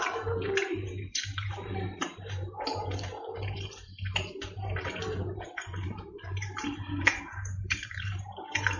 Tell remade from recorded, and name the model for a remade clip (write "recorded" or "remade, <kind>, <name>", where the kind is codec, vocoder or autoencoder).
remade, vocoder, BigVGAN v2